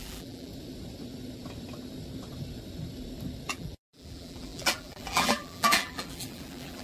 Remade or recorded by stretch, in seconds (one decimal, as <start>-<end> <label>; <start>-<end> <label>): 0.0-0.5 remade; 0.5-3.5 recorded; 3.5-6.8 remade